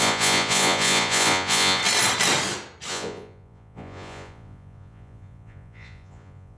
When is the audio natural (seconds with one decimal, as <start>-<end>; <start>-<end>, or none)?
1.8-2.9